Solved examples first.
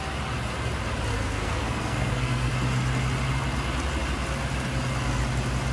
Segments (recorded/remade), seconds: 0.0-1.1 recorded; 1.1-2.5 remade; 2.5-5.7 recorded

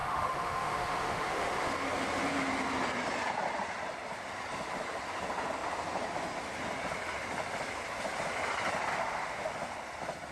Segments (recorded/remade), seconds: 0.0-1.7 remade; 1.7-8.9 recorded; 8.9-9.5 remade; 9.5-10.3 recorded